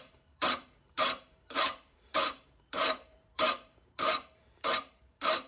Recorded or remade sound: remade